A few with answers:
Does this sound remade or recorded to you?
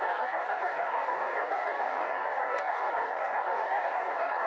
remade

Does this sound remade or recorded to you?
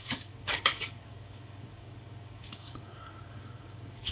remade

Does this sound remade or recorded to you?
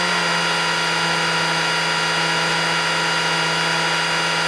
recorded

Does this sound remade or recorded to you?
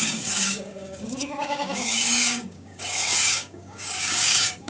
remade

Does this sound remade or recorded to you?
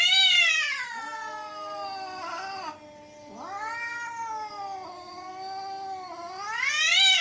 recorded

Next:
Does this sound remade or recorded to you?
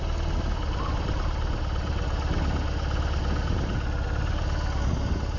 recorded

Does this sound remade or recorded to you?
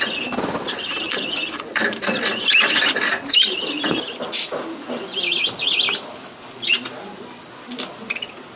recorded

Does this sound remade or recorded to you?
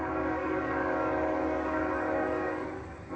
remade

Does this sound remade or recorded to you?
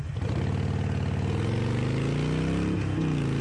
recorded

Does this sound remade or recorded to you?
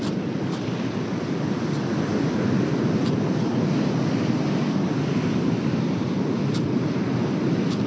recorded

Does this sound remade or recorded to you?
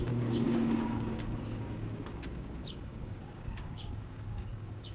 remade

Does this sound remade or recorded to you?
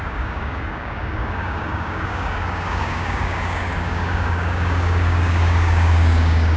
remade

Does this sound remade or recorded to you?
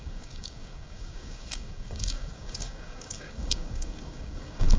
remade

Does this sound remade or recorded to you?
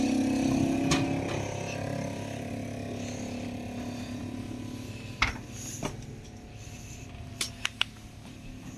recorded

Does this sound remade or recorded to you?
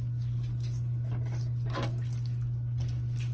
recorded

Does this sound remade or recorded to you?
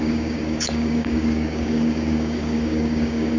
remade